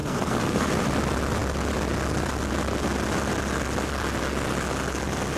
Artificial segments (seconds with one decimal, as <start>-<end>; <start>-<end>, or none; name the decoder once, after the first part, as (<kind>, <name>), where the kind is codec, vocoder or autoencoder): 0.0-0.7 (codec, SNAC)